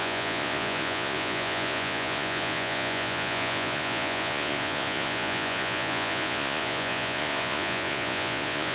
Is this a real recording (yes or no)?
no